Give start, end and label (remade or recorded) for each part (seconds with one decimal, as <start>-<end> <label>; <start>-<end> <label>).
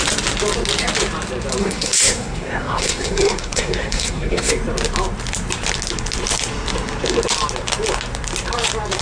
0.0-1.6 recorded; 1.6-4.5 remade; 4.5-9.0 recorded